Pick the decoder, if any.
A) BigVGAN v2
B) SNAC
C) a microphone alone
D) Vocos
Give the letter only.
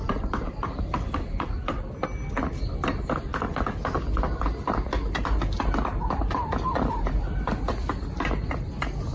C